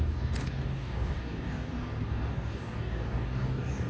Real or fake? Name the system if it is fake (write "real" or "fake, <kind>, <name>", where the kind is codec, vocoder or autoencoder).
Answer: fake, codec, DAC